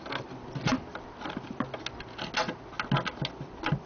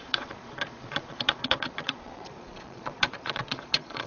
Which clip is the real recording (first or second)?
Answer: first